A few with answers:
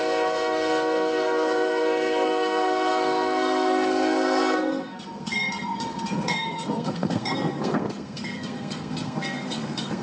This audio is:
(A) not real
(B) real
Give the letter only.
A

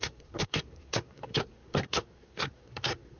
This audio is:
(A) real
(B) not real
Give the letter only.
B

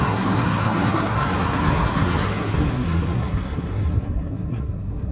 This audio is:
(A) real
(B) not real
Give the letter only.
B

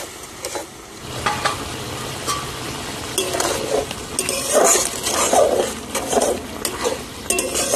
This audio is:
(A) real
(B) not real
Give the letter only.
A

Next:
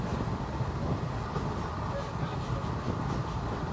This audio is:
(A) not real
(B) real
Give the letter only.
B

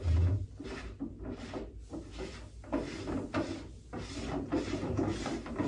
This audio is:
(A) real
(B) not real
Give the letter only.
A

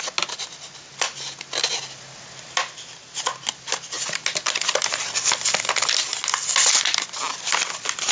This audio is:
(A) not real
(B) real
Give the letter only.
B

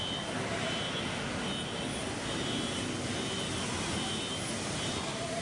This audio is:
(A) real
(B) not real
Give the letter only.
A